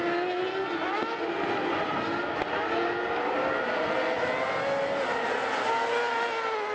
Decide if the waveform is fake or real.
real